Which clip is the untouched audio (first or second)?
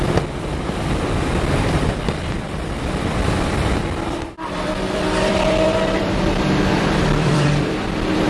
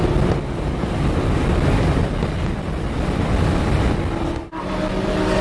second